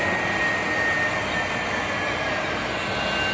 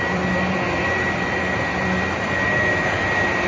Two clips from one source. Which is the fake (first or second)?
second